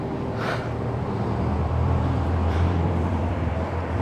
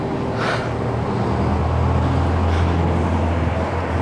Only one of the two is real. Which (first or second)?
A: second